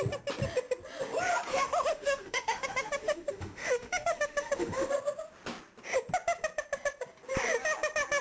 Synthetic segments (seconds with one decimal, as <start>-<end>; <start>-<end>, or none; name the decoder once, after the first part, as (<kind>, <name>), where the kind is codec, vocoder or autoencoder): 1.5-4.9 (autoencoder, DAC-VAE)